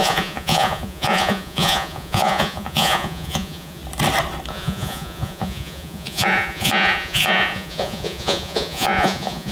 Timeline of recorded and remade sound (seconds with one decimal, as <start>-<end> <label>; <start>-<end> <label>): 0.0-3.8 remade; 3.8-4.5 recorded; 4.5-9.5 remade